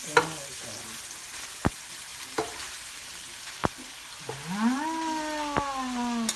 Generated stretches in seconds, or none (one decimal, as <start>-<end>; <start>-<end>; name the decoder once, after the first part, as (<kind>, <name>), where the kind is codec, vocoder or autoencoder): 2.1-2.9 (vocoder, BigVGAN v2)